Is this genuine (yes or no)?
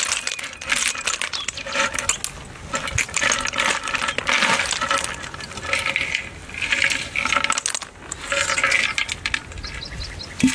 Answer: yes